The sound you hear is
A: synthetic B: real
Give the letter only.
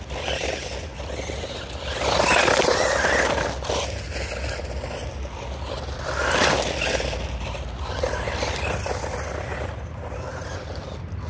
B